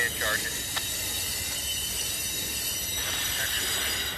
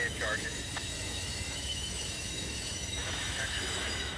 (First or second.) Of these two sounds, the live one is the first